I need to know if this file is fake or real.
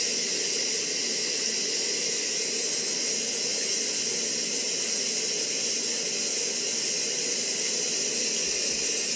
real